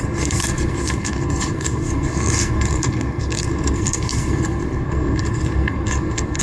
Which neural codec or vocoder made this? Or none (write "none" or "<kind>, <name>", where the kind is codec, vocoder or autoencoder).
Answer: codec, SNAC